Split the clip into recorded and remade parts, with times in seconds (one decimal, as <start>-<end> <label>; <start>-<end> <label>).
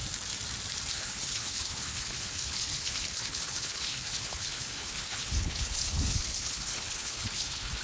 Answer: 0.0-0.9 recorded; 0.9-7.8 remade